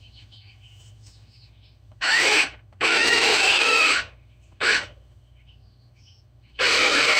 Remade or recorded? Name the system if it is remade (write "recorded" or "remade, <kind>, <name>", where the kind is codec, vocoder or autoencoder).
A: remade, autoencoder, DAC-VAE